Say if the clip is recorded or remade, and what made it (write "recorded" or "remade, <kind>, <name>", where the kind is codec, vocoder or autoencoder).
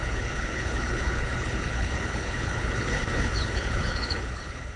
remade, codec, HILCodec